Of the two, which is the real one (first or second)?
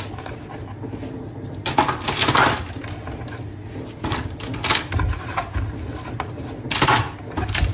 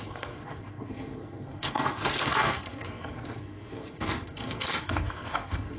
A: first